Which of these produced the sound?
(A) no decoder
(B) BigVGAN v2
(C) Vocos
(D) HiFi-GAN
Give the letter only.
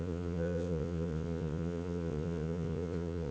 C